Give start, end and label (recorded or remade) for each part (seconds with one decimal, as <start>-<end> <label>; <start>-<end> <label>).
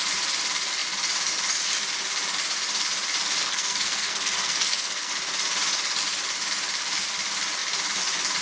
0.0-3.4 recorded; 3.4-5.1 remade; 5.1-8.4 recorded